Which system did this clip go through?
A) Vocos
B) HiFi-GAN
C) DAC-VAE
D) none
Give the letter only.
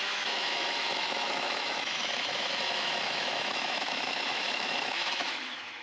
C